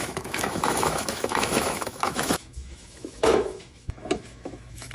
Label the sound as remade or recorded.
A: remade